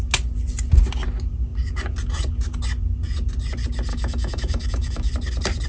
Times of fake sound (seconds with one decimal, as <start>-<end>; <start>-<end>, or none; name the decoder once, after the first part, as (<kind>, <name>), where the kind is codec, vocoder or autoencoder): 3.9-5.1 (autoencoder, DAC-VAE)